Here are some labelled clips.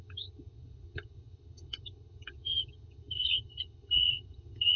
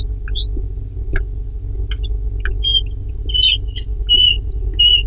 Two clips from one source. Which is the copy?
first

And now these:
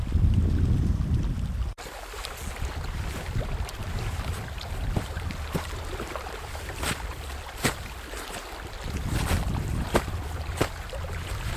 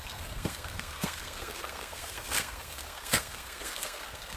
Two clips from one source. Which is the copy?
second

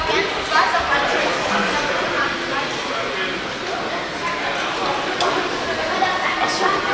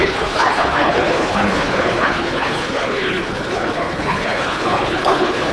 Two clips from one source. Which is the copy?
second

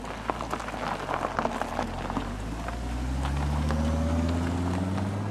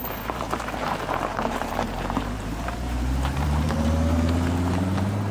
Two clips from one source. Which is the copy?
second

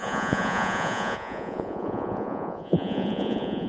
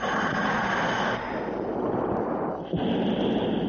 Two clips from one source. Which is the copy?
first